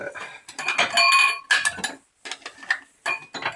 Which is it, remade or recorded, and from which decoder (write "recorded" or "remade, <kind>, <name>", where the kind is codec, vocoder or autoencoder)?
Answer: recorded